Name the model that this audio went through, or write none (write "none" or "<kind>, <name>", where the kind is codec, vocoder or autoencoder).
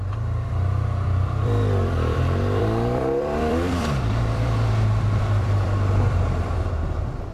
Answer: vocoder, BigVGAN v2